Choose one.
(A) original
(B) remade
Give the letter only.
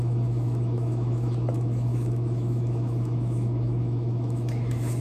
B